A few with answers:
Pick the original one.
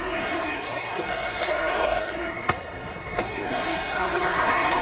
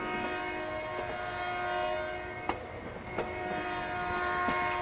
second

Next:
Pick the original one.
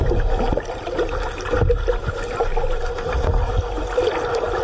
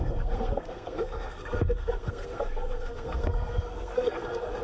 first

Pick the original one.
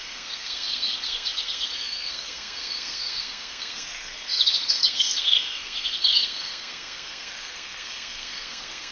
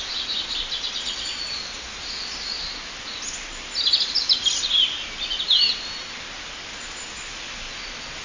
second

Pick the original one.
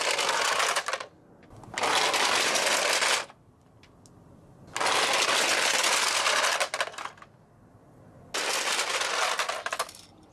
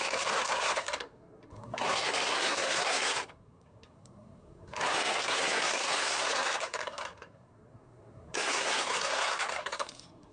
first